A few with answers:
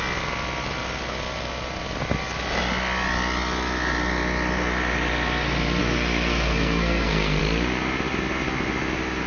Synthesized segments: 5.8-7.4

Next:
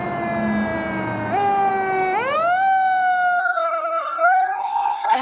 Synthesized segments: 3.4-5.2

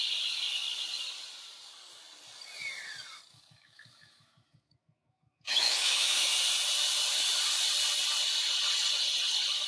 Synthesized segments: 3.3-6.4

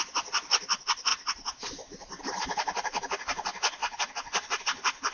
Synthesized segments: none

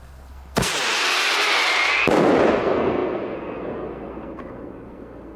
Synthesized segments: 0.0-0.7; 2.6-5.4

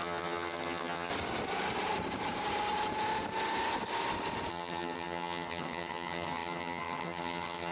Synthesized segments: 0.0-1.1; 4.5-7.7

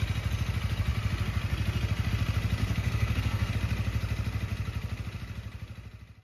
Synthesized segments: 2.6-3.5